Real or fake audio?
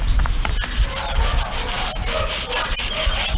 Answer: real